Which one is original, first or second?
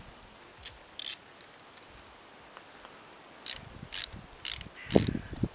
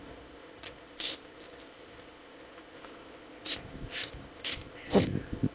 first